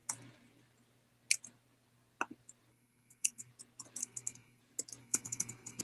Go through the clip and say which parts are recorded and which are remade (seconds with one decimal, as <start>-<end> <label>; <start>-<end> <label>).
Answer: 0.0-2.7 recorded; 2.7-3.5 remade; 3.5-4.0 recorded; 4.0-4.6 remade; 4.6-5.0 recorded; 5.0-5.8 remade